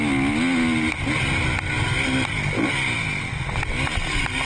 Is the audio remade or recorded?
recorded